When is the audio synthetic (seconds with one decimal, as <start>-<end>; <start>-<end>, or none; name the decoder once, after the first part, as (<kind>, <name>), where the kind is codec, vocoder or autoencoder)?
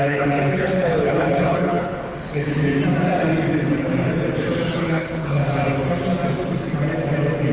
0.0-2.6 (codec, HILCodec); 4.8-5.4